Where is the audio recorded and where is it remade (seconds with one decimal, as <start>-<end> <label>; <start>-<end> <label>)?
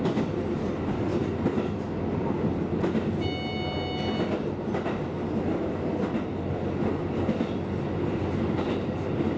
0.0-9.4 recorded